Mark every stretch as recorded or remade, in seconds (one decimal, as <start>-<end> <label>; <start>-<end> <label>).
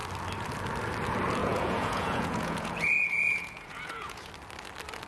0.0-1.4 recorded; 1.4-4.3 remade; 4.3-5.1 recorded